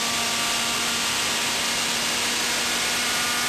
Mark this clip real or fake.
real